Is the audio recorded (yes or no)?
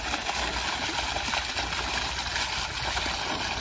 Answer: yes